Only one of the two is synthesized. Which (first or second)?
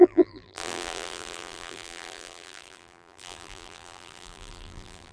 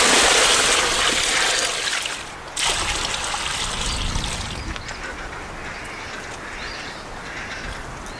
first